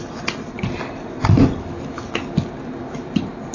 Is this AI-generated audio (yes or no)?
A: no